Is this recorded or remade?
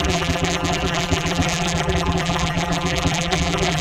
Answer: remade